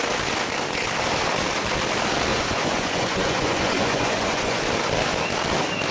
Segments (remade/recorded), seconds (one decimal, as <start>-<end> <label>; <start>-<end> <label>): 0.0-2.3 recorded; 2.3-4.6 remade; 4.6-5.9 recorded